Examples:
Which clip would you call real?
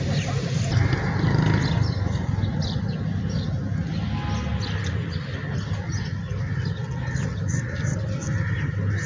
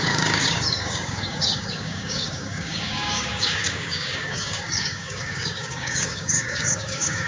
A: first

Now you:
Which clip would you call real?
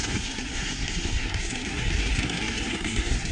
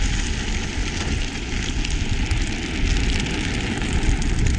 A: second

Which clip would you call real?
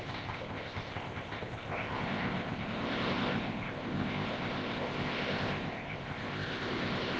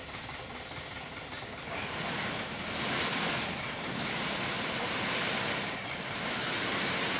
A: second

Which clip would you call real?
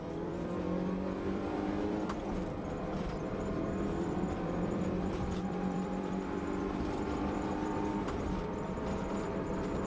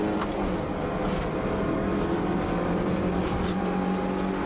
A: second